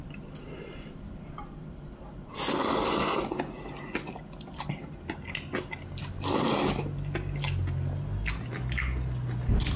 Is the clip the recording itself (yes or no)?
yes